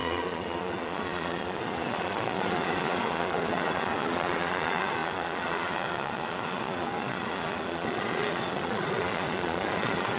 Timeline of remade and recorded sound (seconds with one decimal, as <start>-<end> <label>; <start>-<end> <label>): 0.0-10.2 remade